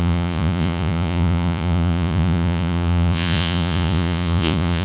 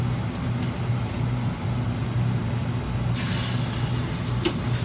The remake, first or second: first